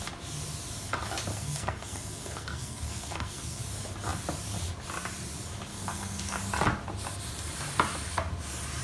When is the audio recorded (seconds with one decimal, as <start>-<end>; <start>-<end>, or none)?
0.0-1.3; 3.6-5.7; 6.4-8.8